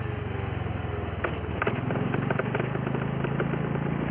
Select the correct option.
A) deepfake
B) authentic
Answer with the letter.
B